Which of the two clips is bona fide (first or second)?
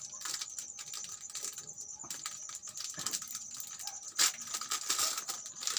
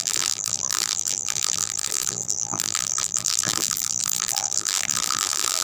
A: first